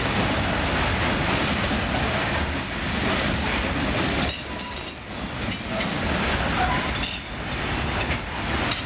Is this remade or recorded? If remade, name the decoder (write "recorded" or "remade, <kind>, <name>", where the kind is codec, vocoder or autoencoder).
recorded